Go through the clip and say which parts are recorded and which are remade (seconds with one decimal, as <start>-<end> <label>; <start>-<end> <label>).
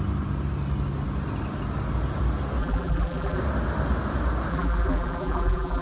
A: 0.0-2.6 recorded; 2.6-3.4 remade; 3.4-4.5 recorded; 4.5-5.8 remade